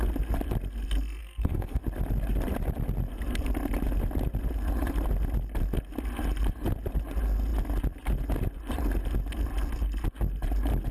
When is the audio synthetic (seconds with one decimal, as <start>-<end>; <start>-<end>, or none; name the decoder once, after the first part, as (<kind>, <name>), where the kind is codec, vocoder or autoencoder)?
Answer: 1.2-1.8 (codec, SNAC)